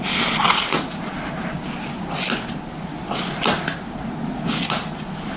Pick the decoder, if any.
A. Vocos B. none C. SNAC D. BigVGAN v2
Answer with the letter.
B